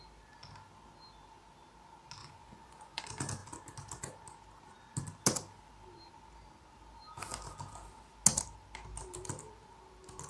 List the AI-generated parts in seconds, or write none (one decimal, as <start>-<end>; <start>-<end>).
2.2-3.0